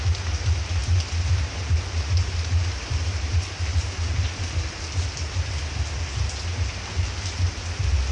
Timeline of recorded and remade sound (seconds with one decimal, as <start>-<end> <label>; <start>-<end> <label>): 0.0-0.8 recorded; 0.8-4.4 remade; 4.4-8.1 recorded

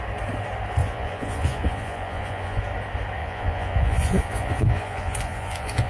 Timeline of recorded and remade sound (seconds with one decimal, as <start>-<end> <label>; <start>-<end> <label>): 0.0-0.8 recorded; 0.8-2.6 remade; 2.6-3.2 recorded; 3.2-5.9 remade

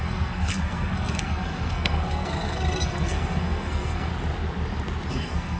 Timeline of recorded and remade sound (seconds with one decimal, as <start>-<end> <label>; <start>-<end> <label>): 0.0-4.1 remade; 4.1-5.1 recorded; 5.1-5.6 remade

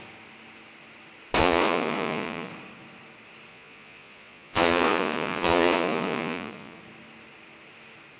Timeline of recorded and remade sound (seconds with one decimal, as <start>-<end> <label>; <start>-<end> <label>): 0.0-1.4 recorded; 1.4-2.5 remade; 2.5-3.5 recorded; 3.5-6.8 remade; 6.8-8.2 recorded